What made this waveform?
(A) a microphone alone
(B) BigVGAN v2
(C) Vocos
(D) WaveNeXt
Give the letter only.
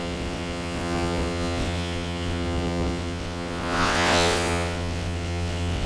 D